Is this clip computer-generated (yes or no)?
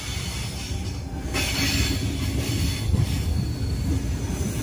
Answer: no